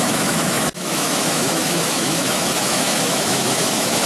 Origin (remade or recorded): remade